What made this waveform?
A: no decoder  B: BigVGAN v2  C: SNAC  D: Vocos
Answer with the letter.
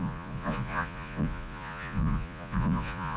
D